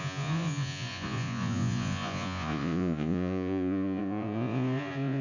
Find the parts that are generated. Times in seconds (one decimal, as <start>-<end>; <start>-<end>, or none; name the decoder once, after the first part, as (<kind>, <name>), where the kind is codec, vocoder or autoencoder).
0.0-5.2 (vocoder, Vocos)